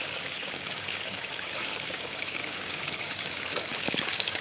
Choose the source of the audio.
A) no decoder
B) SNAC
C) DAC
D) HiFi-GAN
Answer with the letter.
C